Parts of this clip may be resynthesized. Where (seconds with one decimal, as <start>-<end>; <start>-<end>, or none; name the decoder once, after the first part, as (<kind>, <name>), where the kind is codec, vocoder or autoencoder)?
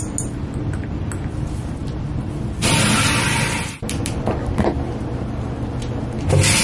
1.8-5.8 (vocoder, BigVGAN v2)